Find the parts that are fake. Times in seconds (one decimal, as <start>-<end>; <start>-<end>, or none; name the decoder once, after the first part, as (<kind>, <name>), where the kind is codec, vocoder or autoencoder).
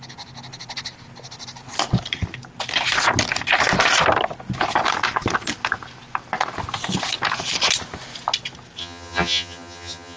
8.8-10.2 (vocoder, HiFi-GAN)